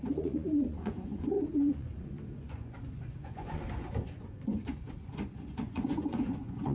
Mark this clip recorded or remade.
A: remade